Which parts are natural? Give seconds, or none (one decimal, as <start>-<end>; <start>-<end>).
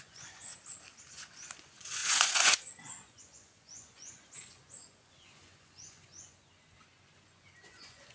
0.5-1.1